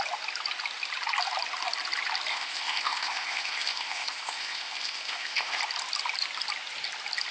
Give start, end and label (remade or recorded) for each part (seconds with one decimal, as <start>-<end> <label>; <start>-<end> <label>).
0.0-2.3 recorded; 2.3-5.6 remade; 5.6-7.3 recorded